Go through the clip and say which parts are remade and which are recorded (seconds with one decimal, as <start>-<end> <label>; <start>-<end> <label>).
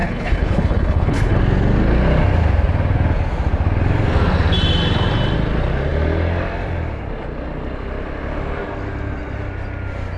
0.0-1.4 remade; 1.4-10.2 recorded